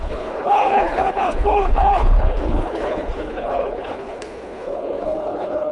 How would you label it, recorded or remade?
remade